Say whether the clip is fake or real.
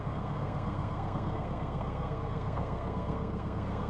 fake